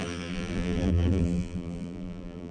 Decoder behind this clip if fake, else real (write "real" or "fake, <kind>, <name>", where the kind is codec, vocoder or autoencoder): fake, vocoder, BigVGAN v2